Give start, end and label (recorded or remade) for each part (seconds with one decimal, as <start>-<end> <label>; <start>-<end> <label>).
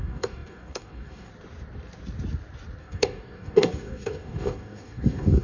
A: 0.0-1.3 remade; 1.3-2.8 recorded; 2.8-5.4 remade